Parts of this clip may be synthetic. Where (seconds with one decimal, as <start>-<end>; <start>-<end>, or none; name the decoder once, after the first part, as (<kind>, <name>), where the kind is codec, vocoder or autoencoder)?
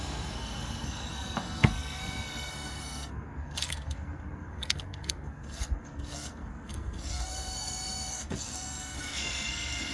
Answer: 0.0-9.9 (codec, SNAC)